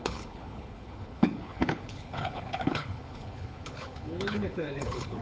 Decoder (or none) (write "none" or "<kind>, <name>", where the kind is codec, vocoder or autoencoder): codec, HILCodec